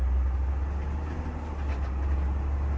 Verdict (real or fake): real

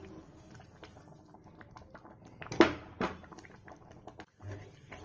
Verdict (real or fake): real